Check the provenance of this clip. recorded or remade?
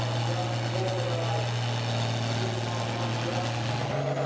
recorded